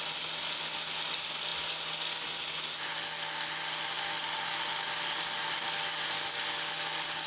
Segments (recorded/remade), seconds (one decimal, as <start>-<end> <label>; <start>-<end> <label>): 0.0-7.3 recorded